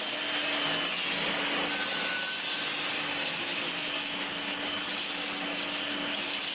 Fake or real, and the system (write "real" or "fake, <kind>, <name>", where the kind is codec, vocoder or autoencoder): real